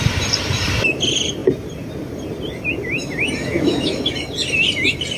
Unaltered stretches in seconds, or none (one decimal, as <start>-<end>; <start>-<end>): 0.0-3.4; 4.0-5.2